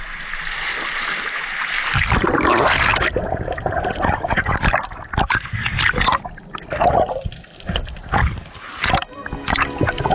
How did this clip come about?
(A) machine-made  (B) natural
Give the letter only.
B